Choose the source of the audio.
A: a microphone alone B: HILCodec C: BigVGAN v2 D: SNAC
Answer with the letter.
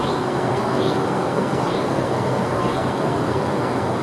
D